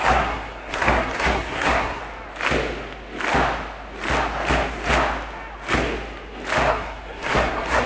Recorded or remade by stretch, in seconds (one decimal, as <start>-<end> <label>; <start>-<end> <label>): 0.0-2.0 remade; 2.0-6.7 recorded; 6.7-7.9 remade